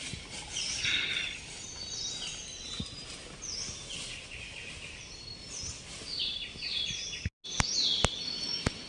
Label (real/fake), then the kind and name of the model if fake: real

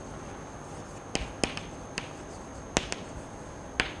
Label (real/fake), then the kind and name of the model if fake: real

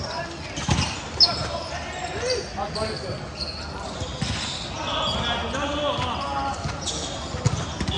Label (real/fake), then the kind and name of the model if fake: real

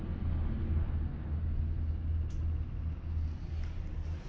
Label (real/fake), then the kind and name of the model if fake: real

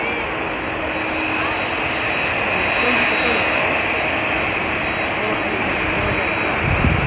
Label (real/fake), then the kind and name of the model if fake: real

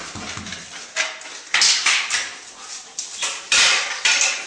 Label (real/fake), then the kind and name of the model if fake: real